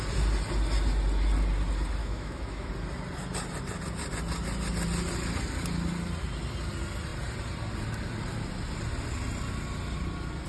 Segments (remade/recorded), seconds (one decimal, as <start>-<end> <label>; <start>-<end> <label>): 0.0-2.0 recorded; 2.0-2.7 remade; 2.7-10.5 recorded